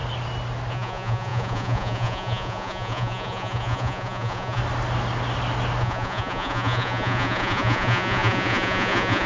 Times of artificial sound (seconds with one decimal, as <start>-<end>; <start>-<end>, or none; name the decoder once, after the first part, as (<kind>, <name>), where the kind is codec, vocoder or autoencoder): 0.7-4.6 (vocoder, Vocos); 5.8-9.3